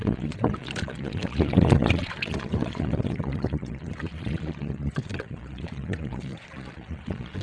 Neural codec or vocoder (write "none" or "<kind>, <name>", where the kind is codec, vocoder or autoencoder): vocoder, Vocos